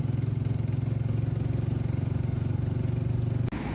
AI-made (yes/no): no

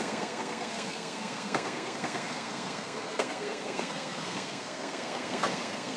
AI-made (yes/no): yes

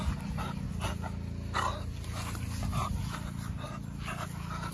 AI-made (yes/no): no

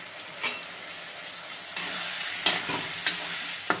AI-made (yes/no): no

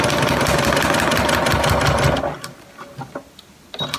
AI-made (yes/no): no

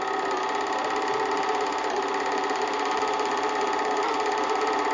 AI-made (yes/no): no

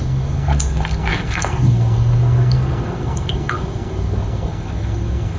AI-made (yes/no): yes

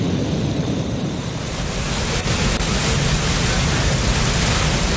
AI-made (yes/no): no